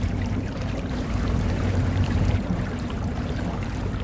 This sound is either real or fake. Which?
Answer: fake